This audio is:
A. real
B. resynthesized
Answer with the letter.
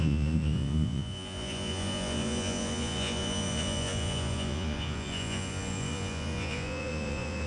B